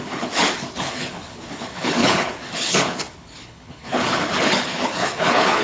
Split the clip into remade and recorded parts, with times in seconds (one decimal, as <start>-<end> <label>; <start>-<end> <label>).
0.0-5.6 remade